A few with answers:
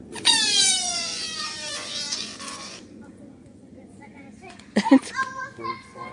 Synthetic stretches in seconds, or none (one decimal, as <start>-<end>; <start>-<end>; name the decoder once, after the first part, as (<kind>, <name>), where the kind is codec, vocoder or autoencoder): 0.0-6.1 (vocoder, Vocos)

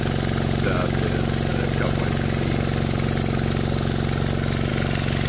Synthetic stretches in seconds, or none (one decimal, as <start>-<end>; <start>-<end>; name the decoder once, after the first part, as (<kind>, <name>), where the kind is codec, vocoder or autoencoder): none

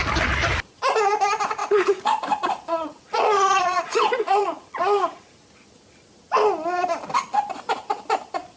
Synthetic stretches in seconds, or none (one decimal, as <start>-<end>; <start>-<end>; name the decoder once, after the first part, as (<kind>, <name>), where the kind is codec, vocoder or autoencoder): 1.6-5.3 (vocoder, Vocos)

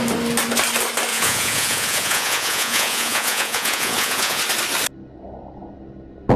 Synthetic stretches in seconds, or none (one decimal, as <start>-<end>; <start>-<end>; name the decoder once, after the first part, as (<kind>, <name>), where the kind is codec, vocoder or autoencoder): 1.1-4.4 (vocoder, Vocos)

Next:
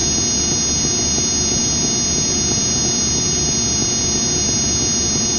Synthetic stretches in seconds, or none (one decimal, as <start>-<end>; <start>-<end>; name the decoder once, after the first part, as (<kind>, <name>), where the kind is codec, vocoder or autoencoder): none